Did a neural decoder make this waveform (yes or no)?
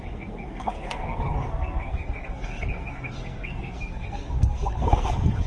yes